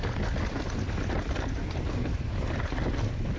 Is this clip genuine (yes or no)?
yes